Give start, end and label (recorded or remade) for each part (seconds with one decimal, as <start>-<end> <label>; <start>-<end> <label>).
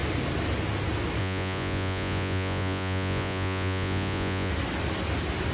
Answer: 0.0-1.2 recorded; 1.2-4.5 remade; 4.5-5.5 recorded